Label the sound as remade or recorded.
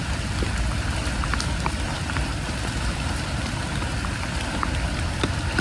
recorded